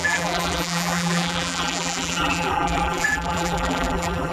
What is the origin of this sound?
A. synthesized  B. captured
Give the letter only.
A